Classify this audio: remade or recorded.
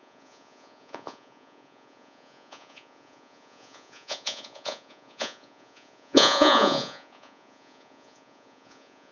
remade